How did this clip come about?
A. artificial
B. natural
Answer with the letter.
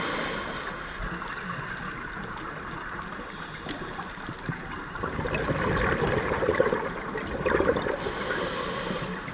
A